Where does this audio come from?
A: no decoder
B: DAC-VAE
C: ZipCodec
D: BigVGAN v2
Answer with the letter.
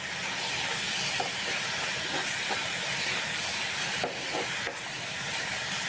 A